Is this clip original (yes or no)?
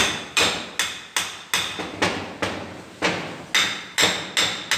yes